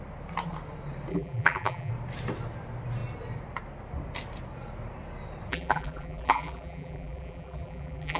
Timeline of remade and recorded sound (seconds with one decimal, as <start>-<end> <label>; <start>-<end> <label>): 0.0-1.1 recorded; 1.1-1.9 remade; 1.9-5.5 recorded; 5.5-8.2 remade